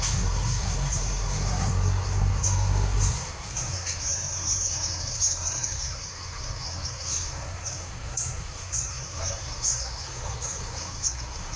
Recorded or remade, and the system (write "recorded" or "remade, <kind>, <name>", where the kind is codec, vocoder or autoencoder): remade, codec, SNAC